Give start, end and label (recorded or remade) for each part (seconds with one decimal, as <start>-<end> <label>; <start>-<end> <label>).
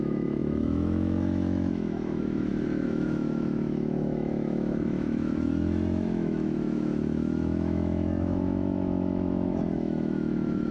0.0-10.7 remade